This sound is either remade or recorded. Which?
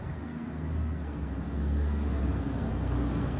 remade